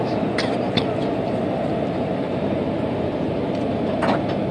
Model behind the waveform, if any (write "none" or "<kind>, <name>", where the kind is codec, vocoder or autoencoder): vocoder, BigVGAN v2